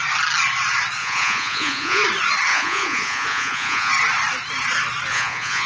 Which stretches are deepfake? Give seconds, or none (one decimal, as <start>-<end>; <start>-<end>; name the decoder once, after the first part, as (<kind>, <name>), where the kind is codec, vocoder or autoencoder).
1.0-2.0 (vocoder, Vocos); 2.5-3.9; 5.1-5.7